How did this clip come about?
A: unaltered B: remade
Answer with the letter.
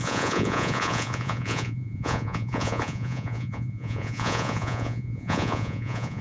B